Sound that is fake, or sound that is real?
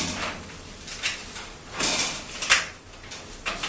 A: real